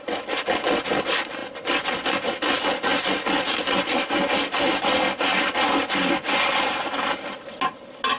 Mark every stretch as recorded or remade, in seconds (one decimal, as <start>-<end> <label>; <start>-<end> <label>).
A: 0.0-8.2 recorded